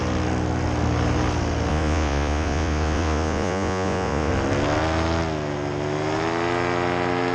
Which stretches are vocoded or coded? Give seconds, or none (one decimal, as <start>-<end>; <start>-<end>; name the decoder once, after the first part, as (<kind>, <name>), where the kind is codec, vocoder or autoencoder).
1.7-4.3 (vocoder, Vocos)

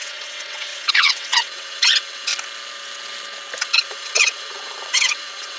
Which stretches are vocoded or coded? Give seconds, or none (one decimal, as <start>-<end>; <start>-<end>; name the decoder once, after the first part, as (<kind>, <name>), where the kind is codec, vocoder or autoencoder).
0.0-2.3 (vocoder, WaveNeXt); 3.6-5.6